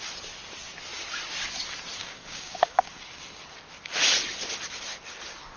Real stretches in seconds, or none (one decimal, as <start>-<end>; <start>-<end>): 0.0-2.0; 2.9-5.6